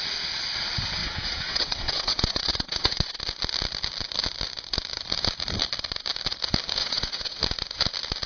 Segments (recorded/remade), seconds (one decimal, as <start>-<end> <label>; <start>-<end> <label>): 0.0-1.0 recorded; 1.0-3.2 remade; 3.2-6.8 recorded; 6.8-7.4 remade; 7.4-8.3 recorded